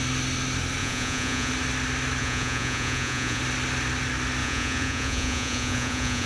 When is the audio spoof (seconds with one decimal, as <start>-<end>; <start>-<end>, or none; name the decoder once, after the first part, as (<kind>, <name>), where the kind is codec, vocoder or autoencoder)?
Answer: 0.8-1.5 (vocoder, Vocos); 2.2-3.4; 4.4-6.3